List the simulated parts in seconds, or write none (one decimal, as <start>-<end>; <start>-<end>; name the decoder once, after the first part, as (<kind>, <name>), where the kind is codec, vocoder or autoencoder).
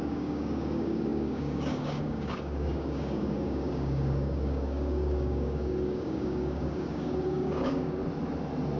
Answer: 0.0-8.0 (codec, DAC)